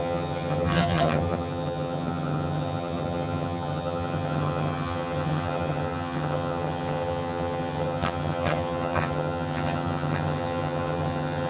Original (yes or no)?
no